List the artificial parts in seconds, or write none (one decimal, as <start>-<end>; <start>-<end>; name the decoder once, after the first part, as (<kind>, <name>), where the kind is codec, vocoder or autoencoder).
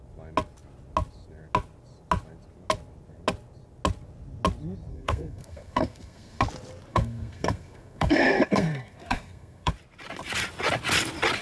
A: 4.9-6.4 (codec, SNAC); 6.9-9.7